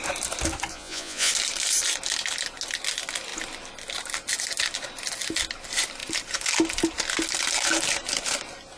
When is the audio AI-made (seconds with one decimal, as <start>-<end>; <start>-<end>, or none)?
0.7-1.3